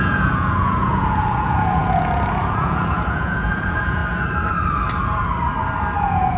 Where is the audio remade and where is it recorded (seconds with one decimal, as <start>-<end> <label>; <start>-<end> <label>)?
0.0-4.0 remade; 4.0-6.0 recorded; 6.0-6.4 remade